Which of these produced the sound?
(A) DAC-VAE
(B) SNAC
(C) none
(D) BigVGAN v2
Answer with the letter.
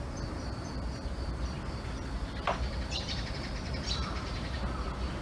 D